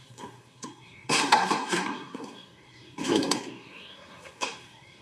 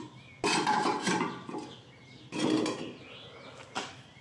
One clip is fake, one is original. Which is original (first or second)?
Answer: second